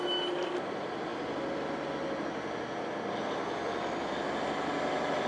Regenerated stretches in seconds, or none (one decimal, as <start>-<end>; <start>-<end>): none